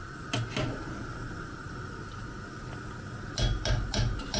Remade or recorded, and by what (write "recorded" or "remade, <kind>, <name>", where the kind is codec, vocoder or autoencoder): recorded